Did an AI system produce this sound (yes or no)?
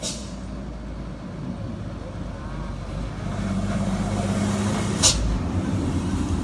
no